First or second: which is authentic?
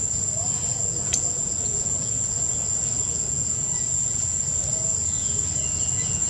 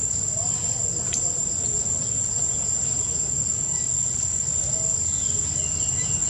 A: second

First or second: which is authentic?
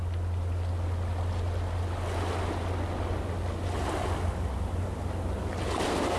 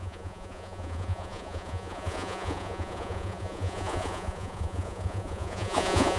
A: first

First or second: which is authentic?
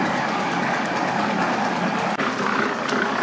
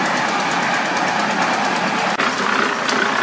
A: second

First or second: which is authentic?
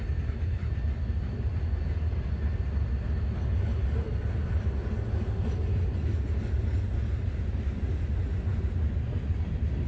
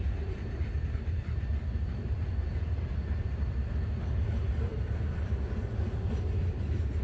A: first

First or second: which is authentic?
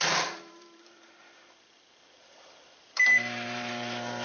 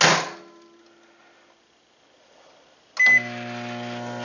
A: second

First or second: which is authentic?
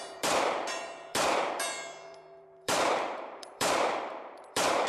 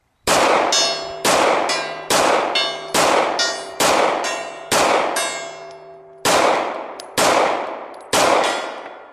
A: second